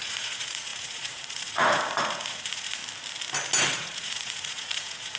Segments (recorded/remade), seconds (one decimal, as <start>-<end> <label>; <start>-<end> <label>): 0.0-2.8 remade; 2.8-3.6 recorded; 3.6-5.2 remade